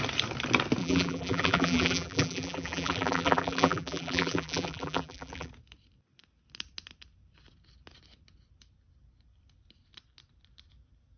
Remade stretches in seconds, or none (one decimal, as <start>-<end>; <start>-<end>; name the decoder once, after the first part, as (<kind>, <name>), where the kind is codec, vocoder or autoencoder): 0.8-5.5 (vocoder, BigVGAN v2)